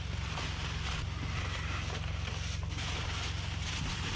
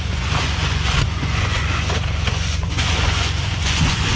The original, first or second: first